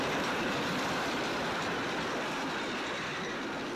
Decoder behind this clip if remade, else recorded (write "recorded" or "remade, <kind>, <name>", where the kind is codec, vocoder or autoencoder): remade, vocoder, BigVGAN v2